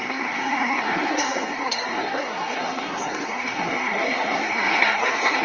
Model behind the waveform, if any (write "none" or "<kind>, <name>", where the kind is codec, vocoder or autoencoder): codec, SNAC